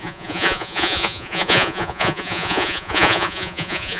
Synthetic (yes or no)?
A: yes